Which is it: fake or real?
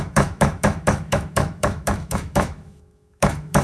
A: fake